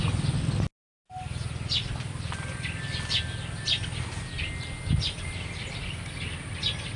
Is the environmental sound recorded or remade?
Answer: recorded